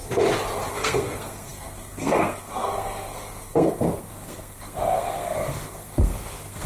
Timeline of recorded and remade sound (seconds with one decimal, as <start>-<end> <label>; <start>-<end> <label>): 0.0-0.7 recorded; 0.7-6.7 remade